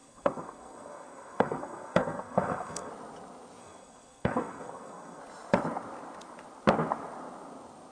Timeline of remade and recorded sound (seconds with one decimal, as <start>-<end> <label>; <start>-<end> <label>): 0.0-2.9 remade; 2.9-3.6 recorded; 3.6-5.2 remade; 5.2-7.9 recorded